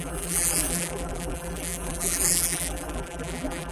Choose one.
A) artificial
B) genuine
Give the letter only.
A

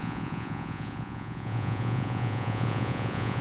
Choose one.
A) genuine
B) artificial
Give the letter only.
B